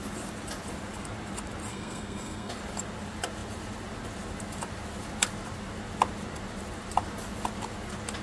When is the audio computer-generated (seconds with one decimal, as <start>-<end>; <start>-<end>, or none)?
1.7-2.5

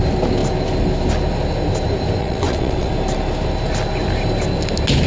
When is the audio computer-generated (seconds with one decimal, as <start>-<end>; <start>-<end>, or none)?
2.2-2.9

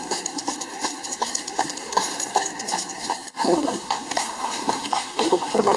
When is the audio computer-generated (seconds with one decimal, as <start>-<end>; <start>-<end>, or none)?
0.0-5.8

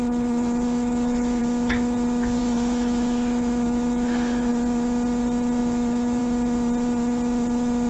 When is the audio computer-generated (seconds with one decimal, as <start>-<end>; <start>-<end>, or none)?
0.0-1.4; 2.4-4.5; 5.6-6.2

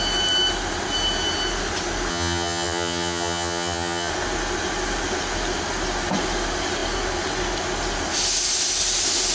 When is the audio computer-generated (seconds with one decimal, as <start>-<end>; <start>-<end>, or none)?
2.1-4.1

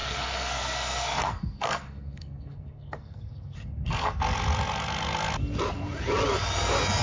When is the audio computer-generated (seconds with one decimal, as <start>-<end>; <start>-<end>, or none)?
0.0-4.2

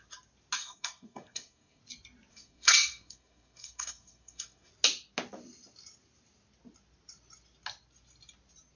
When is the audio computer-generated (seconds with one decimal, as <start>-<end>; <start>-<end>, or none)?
0.6-1.8; 2.3-4.7

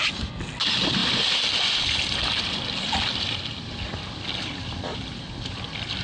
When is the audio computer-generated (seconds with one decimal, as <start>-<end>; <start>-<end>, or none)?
none